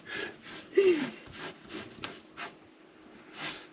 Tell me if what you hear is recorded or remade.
recorded